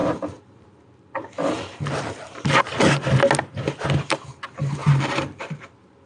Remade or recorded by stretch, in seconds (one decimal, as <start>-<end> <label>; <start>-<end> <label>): 0.0-2.6 remade; 2.6-4.8 recorded; 4.8-6.1 remade